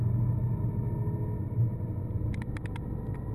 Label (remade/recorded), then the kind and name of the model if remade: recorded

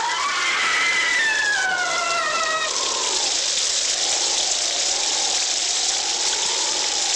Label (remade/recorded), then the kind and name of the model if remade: recorded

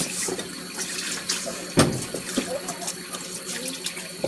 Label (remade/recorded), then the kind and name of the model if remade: recorded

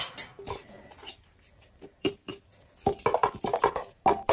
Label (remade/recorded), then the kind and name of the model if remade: recorded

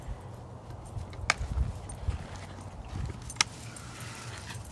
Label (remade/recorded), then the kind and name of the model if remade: recorded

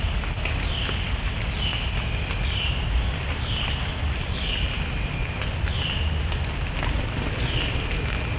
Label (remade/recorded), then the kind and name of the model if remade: recorded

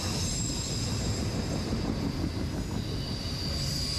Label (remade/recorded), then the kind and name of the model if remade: recorded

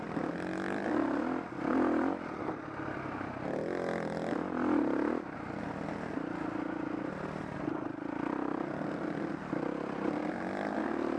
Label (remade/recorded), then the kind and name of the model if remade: recorded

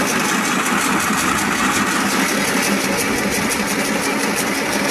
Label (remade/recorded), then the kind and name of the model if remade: recorded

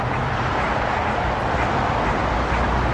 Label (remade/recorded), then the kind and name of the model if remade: recorded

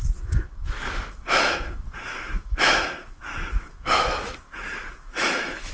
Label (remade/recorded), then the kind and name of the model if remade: remade, autoencoder, DAC-VAE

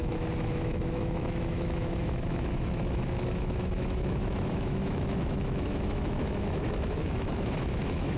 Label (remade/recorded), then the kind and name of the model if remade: remade, autoencoder, DAC-VAE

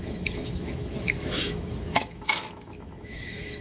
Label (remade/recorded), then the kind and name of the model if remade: remade, autoencoder, DAC-VAE